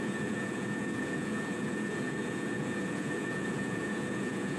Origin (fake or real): fake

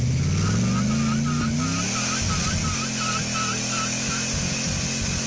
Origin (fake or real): real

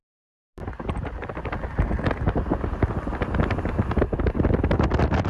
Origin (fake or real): real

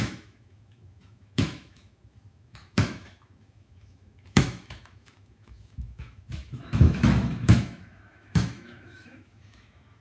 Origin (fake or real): fake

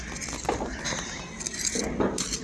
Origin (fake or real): real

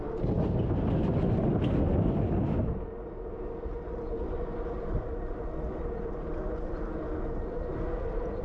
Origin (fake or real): real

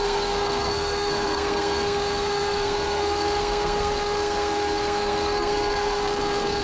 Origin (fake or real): fake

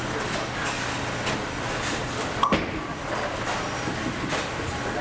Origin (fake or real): real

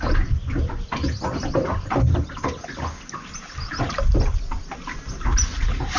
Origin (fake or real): real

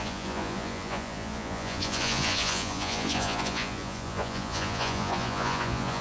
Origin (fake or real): fake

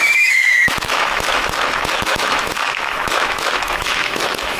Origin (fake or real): fake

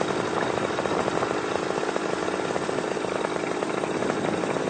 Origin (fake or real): real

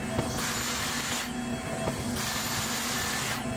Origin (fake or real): real